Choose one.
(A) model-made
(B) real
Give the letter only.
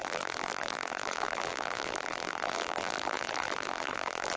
A